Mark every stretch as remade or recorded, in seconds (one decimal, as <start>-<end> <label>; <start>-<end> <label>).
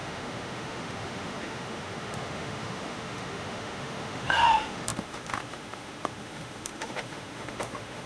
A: 0.0-8.1 remade